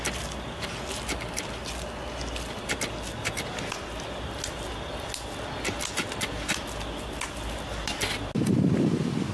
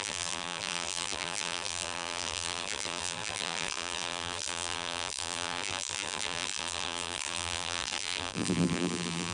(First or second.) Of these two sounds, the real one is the first